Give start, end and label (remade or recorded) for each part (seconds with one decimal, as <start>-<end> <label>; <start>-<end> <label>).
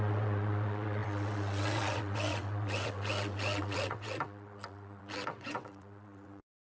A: 0.0-6.7 remade